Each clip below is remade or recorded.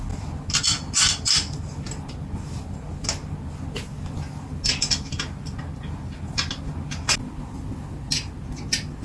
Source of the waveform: recorded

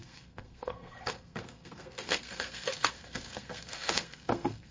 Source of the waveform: remade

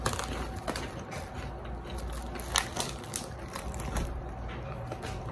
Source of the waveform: recorded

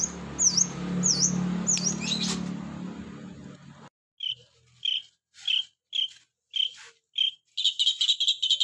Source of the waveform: recorded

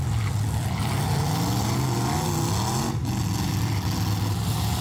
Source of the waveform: recorded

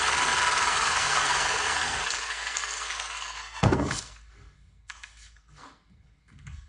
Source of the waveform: remade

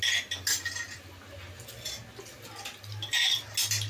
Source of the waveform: recorded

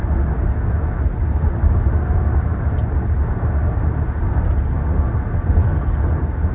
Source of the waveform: recorded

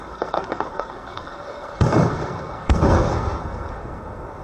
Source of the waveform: remade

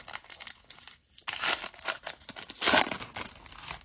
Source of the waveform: recorded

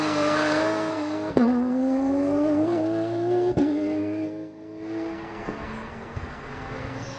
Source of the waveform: remade